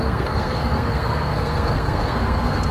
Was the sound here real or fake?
fake